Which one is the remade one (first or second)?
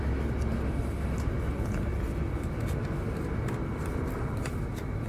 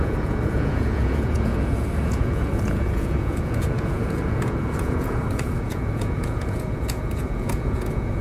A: second